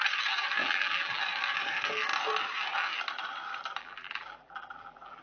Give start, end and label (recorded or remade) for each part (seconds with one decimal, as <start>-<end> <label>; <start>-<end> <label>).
0.0-0.6 recorded; 0.6-1.2 remade; 1.2-3.8 recorded; 3.8-5.2 remade